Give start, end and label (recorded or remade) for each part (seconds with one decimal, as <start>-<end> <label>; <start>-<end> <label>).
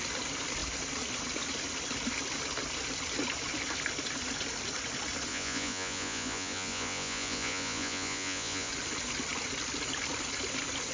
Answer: 0.0-5.3 recorded; 5.3-8.7 remade; 8.7-10.9 recorded